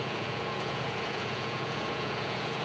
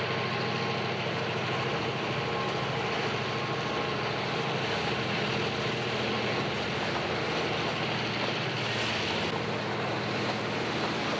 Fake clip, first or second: first